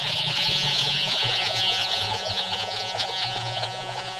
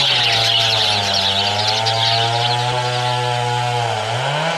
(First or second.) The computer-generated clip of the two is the first